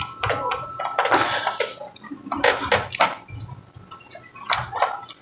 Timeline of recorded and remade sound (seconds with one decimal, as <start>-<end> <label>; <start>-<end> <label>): 0.0-5.2 recorded